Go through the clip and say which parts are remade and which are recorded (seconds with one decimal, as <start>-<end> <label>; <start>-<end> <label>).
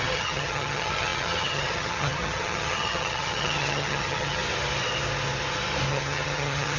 0.0-4.4 remade; 4.4-5.9 recorded; 5.9-6.8 remade